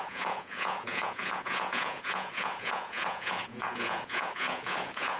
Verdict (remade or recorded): remade